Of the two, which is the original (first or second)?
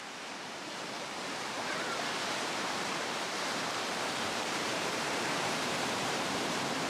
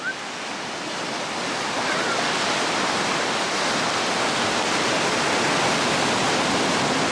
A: second